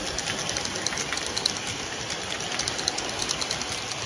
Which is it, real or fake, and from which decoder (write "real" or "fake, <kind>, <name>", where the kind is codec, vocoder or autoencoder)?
real